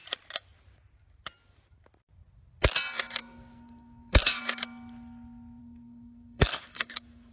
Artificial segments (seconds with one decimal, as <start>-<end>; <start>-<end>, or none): 3.2-4.4; 5.6-7.3